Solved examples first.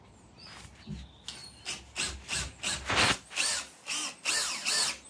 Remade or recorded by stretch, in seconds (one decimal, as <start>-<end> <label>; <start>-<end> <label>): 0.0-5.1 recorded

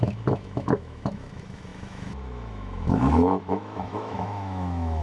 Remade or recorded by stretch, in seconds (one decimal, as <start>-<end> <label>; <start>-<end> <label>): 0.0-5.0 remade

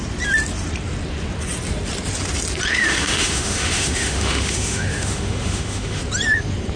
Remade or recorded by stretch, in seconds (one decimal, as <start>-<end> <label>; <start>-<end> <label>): 0.0-2.7 recorded; 2.7-6.0 remade; 6.0-6.8 recorded

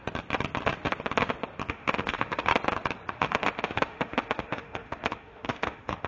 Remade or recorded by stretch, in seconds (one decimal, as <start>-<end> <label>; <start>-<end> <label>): 0.0-1.7 recorded; 1.7-2.5 remade; 2.5-3.1 recorded; 3.1-6.1 remade